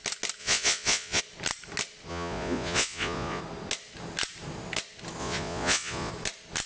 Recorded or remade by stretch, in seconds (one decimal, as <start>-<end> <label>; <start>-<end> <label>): 0.0-0.4 recorded; 0.4-1.2 remade; 1.2-2.1 recorded; 2.1-3.4 remade; 3.4-5.2 recorded; 5.2-6.1 remade; 6.1-6.7 recorded